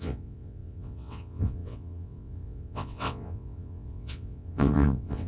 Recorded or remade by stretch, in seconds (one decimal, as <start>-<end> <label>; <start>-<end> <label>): 0.0-5.3 remade